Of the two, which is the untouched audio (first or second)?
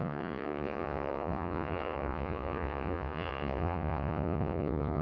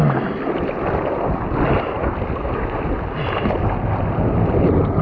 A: second